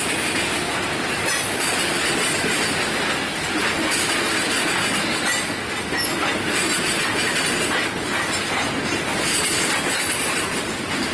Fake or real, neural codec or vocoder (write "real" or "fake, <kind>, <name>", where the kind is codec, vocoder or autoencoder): real